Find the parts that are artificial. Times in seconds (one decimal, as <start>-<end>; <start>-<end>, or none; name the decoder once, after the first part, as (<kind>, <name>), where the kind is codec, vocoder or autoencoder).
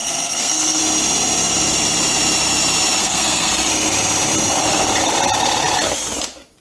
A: 0.0-0.8 (codec, SNAC); 3.0-3.5